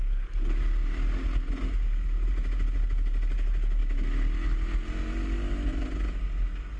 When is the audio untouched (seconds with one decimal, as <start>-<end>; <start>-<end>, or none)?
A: 0.0-6.8